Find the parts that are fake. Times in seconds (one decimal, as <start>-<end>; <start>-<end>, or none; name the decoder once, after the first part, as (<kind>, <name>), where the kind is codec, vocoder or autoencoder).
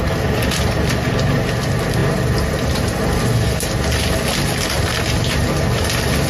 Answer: none